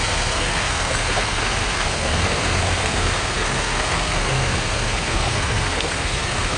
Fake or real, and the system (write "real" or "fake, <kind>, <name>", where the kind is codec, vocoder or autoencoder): fake, codec, SNAC